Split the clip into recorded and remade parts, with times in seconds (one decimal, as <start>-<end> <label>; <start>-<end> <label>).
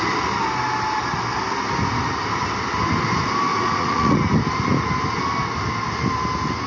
0.0-3.5 recorded; 3.5-4.4 remade; 4.4-6.7 recorded